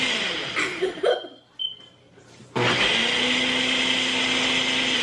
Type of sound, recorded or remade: recorded